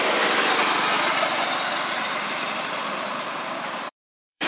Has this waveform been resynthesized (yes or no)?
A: yes